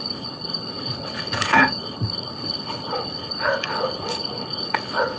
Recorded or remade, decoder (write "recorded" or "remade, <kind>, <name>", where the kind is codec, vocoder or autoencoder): remade, codec, HILCodec